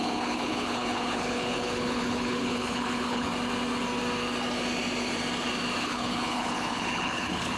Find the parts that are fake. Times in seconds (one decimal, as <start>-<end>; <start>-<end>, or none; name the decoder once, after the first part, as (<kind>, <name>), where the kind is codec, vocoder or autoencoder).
0.0-3.3 (codec, HILCodec); 5.8-7.6